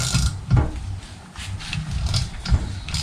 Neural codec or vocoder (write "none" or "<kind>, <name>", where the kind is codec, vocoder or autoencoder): none